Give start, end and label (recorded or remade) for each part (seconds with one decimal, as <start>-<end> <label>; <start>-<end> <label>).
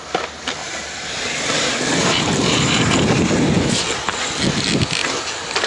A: 0.0-0.6 recorded; 0.6-3.3 remade; 3.3-5.7 recorded